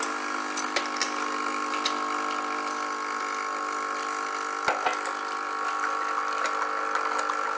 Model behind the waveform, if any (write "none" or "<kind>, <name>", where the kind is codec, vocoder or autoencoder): none